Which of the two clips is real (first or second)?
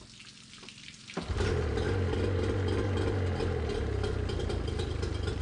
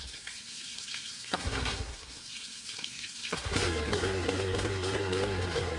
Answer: first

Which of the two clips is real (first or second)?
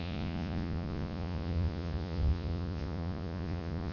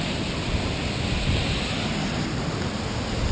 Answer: second